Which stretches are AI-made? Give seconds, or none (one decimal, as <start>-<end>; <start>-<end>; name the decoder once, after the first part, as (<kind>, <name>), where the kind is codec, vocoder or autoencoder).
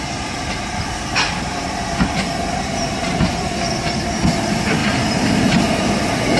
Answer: 4.8-5.9 (vocoder, BigVGAN v2)